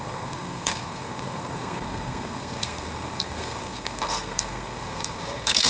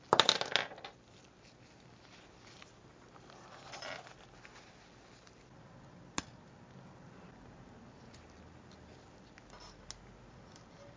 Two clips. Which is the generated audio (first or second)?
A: first